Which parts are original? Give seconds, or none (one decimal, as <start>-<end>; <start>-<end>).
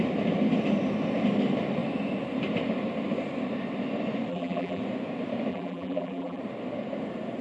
0.0-4.3; 4.8-5.5; 6.4-7.4